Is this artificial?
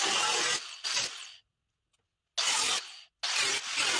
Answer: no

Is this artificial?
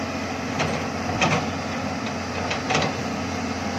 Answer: no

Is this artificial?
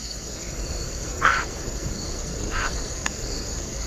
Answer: yes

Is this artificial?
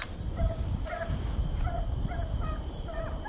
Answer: yes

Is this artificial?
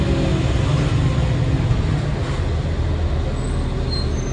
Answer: no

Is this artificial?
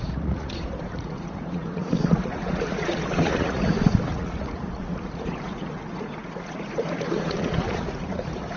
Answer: yes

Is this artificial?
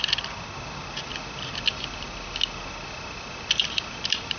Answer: no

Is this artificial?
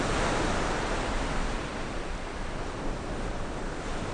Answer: no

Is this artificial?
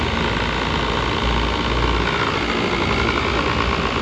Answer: no